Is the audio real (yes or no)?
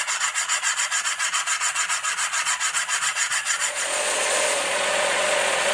no